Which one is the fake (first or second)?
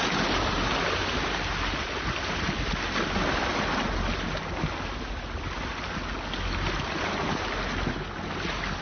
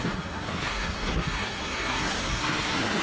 second